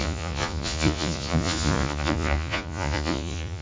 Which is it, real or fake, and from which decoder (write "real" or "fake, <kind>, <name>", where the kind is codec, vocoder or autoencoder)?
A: fake, vocoder, Vocos